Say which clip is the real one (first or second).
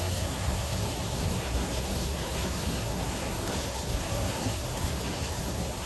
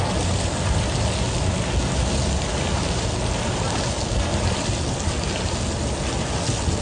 second